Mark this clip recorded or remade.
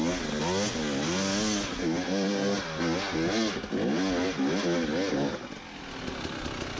recorded